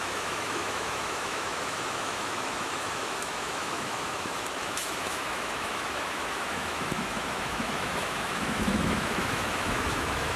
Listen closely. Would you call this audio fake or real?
fake